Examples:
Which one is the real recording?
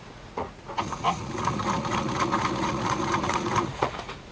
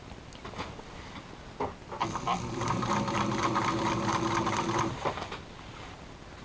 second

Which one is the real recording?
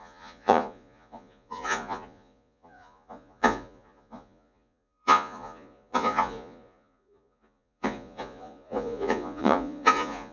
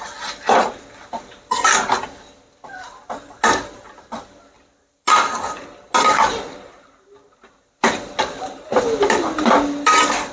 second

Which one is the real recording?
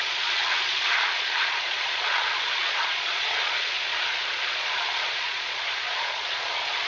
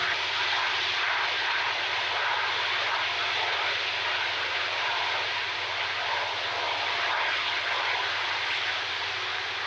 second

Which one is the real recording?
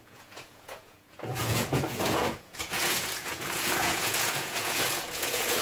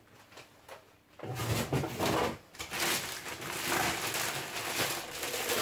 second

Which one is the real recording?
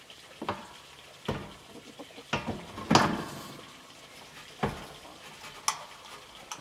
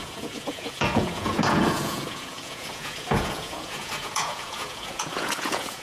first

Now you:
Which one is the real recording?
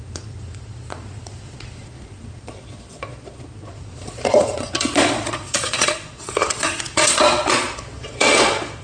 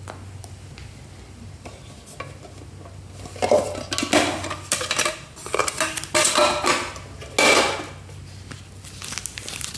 second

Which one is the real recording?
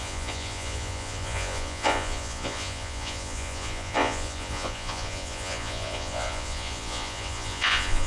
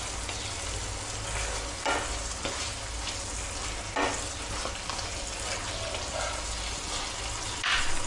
second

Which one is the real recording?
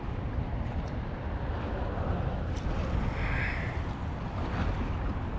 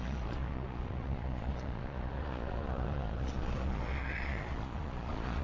first